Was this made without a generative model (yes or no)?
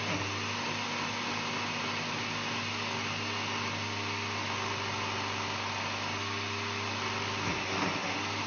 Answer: yes